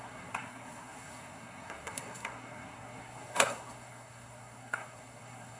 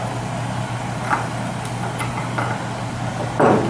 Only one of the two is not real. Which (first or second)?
first